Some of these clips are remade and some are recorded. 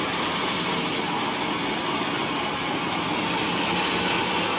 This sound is recorded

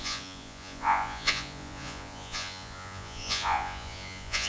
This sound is remade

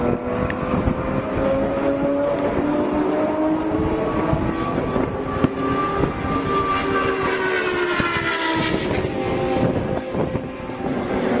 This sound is recorded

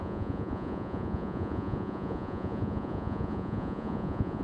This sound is remade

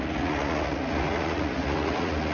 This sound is remade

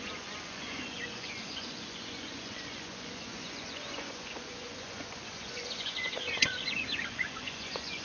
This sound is remade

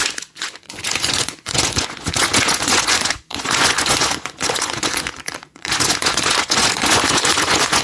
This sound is remade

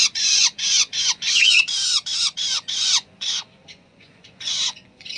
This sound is remade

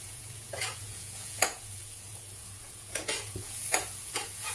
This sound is remade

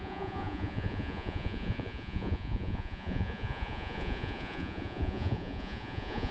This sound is remade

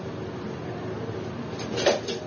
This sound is recorded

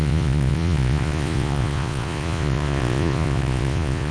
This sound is remade